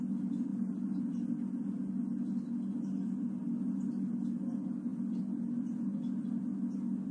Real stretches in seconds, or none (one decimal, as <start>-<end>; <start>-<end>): 0.0-0.5; 1.0-4.9; 6.2-7.1